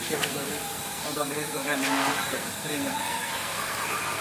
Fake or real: fake